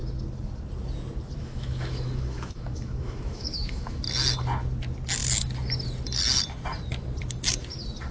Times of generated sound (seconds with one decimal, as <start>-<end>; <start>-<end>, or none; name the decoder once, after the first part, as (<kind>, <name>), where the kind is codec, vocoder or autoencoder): 1.4-4.0 (autoencoder, DAC-VAE)